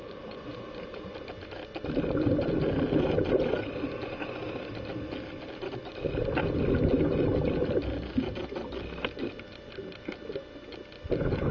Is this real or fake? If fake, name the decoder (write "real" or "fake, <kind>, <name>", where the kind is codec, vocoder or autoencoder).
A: real